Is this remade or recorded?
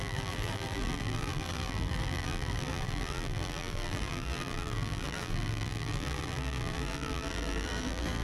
remade